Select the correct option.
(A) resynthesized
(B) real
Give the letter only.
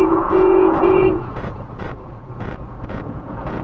A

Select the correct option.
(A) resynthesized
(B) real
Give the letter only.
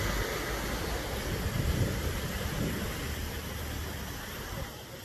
B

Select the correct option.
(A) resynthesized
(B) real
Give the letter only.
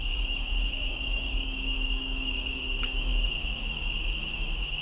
A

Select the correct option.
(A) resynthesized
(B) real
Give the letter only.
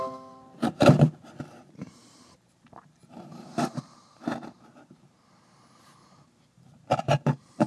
A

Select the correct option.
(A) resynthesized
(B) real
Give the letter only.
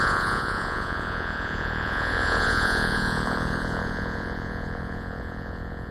A